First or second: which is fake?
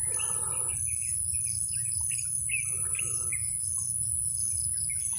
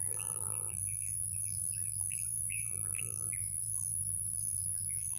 second